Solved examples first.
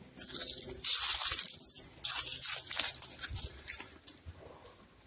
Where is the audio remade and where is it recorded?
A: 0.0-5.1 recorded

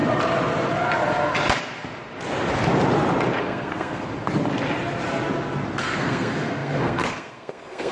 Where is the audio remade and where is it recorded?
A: 0.0-3.4 recorded; 3.4-4.1 remade; 4.1-5.8 recorded; 5.8-7.9 remade

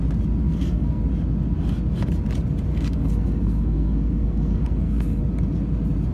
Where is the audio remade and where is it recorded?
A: 0.0-0.4 recorded; 0.4-1.0 remade; 1.0-2.7 recorded; 2.7-5.2 remade; 5.2-6.1 recorded

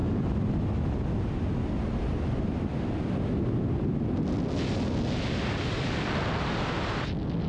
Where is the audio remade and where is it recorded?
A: 0.0-7.5 recorded

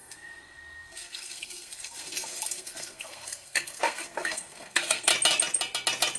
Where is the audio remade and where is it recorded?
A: 0.0-5.1 remade; 5.1-6.2 recorded